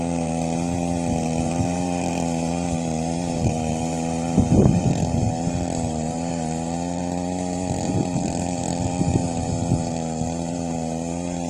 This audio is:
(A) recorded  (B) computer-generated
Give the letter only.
B